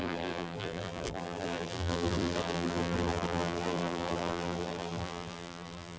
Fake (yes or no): yes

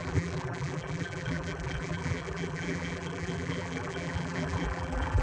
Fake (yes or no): yes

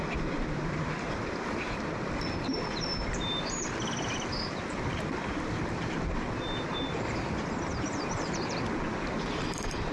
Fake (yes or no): yes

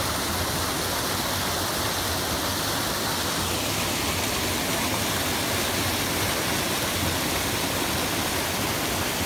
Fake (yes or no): no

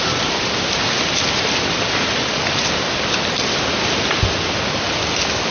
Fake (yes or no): yes